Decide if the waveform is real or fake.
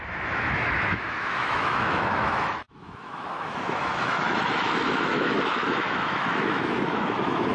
fake